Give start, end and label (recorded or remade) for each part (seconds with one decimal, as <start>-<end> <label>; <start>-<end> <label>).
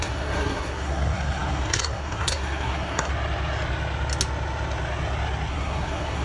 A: 0.0-3.1 remade; 3.1-5.5 recorded; 5.5-6.2 remade